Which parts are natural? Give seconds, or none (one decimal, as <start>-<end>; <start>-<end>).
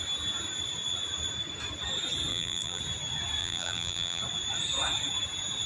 0.0-2.3; 2.8-3.4; 4.2-5.7